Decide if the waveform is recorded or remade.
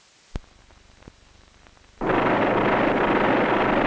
recorded